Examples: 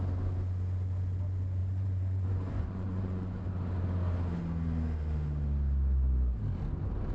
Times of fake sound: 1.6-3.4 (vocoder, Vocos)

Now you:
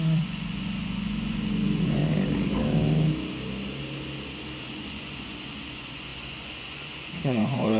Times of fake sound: 0.0-2.0 (vocoder, Vocos); 4.6-7.8

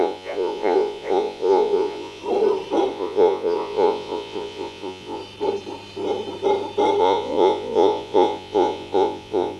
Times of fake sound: 0.0-2.2 (vocoder, Vocos); 2.9-5.2; 7.0-9.6

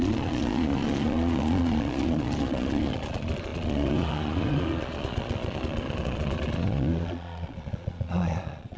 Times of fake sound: 0.0-8.8 (vocoder, Vocos)

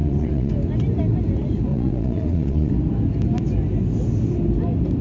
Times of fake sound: 0.0-0.5 (vocoder, Vocos); 1.7-2.7

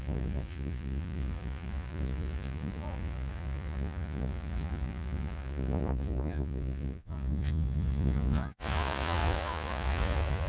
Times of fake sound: 0.0-10.5 (vocoder, Vocos)